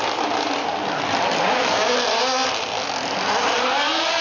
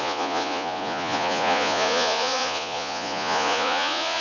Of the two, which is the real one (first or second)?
first